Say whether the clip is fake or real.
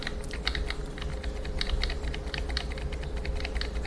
real